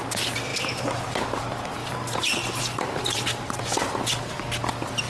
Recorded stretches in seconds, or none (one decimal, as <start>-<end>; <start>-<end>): 0.0-1.8; 3.6-5.1